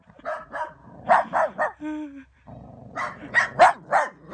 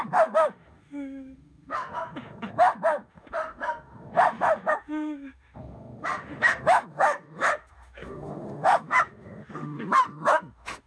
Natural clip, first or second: first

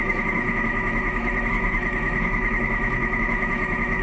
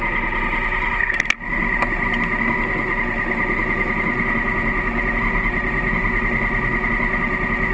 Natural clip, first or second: second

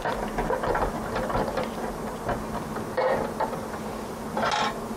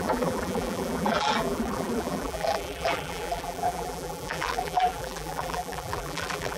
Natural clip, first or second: first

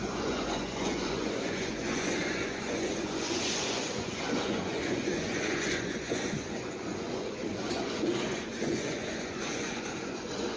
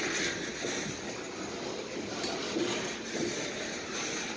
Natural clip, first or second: second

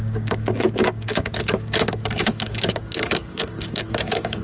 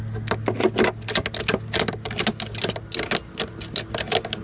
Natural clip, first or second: second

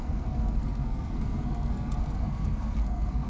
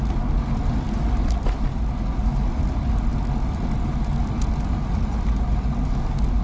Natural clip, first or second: second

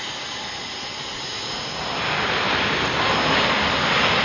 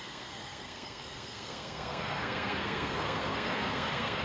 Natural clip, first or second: first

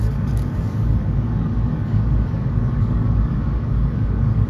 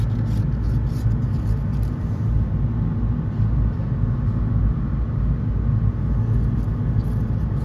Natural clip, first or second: second